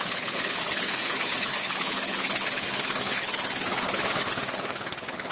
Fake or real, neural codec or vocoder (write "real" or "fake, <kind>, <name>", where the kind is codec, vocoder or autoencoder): fake, codec, HILCodec